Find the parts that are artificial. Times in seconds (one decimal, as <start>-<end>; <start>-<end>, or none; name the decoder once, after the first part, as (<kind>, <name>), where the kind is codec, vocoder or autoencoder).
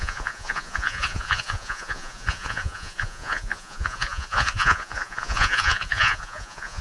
0.0-6.8 (vocoder, Vocos)